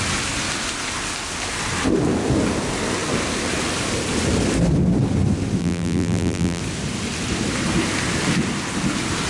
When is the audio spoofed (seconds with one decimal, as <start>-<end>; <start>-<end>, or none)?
5.6-6.6